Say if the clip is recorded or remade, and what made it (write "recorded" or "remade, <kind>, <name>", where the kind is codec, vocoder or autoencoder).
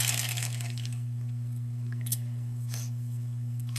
remade, codec, SNAC